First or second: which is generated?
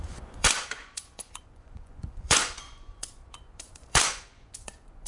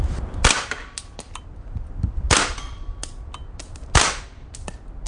first